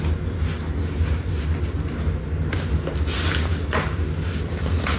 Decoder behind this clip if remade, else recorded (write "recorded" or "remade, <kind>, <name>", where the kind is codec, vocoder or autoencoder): recorded